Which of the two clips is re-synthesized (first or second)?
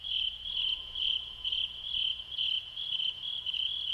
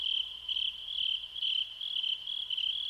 first